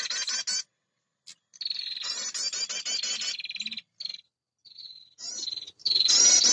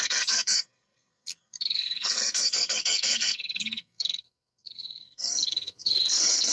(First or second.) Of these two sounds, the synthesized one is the second